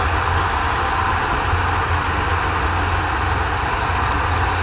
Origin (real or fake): real